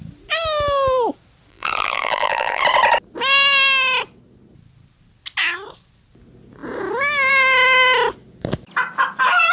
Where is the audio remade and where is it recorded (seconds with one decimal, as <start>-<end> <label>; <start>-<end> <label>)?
0.0-1.5 recorded; 1.5-2.6 remade; 2.6-9.5 recorded